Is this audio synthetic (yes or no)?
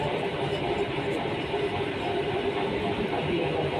yes